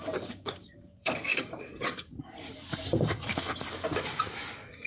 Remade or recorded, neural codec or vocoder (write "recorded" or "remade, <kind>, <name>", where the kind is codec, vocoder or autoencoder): remade, codec, DAC